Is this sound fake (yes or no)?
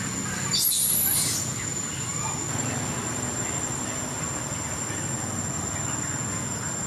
no